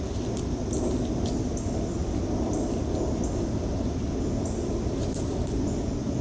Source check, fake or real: real